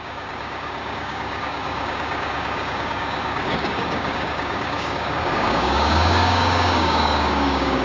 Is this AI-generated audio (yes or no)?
yes